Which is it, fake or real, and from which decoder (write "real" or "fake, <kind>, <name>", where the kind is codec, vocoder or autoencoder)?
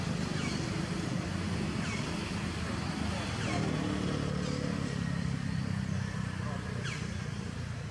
fake, vocoder, BigVGAN v2